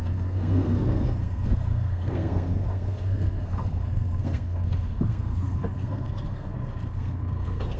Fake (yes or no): yes